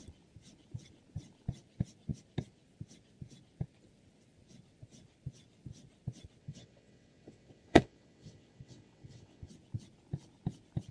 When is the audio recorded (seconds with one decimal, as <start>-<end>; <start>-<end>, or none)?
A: 0.0-6.4; 9.5-10.9